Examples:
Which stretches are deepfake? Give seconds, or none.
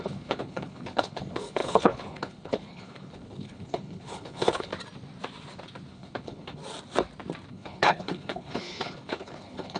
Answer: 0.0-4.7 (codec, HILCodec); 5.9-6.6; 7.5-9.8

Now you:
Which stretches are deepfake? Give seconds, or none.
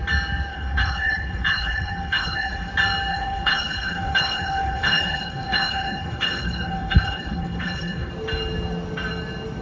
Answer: 0.5-2.7 (codec, HILCodec); 3.1-8.1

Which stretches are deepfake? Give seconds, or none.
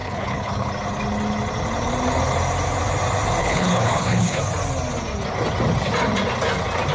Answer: 0.0-0.7 (codec, HILCodec); 3.4-4.4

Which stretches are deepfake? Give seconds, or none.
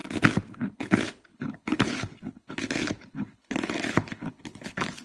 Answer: 0.5-5.0 (codec, HILCodec)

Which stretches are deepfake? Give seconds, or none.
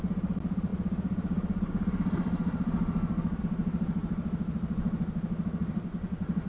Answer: none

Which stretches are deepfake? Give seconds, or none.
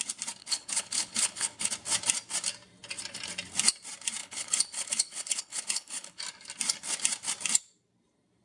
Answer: 0.4-1.7 (codec, HILCodec); 4.2-6.2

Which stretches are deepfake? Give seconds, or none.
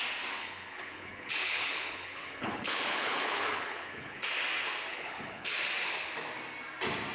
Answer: 0.4-4.2 (codec, HILCodec); 4.9-5.6